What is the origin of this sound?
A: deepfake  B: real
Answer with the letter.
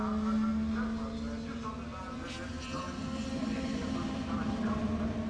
B